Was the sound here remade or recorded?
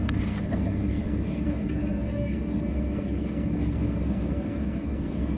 remade